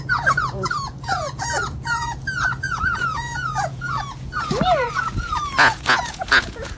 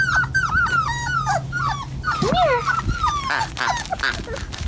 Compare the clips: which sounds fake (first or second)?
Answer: first